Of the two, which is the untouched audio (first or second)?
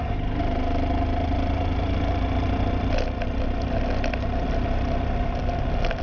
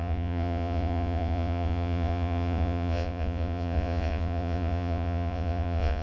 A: first